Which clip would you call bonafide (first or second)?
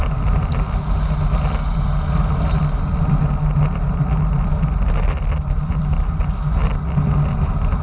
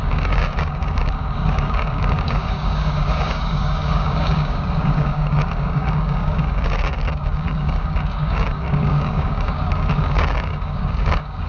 first